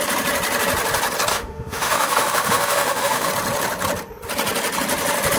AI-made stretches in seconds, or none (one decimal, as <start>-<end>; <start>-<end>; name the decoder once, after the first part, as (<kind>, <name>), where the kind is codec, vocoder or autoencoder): 1.3-3.3 (autoencoder, DAC-VAE)